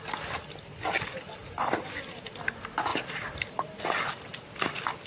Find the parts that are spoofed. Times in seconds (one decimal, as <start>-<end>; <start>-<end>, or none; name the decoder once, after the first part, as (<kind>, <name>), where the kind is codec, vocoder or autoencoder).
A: 1.4-2.3 (vocoder, BigVGAN v2); 2.9-3.8